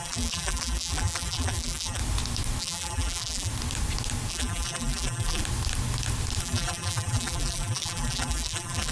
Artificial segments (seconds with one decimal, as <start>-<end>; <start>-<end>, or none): 0.0-2.0; 2.6-3.5; 4.3-5.4; 6.4-8.9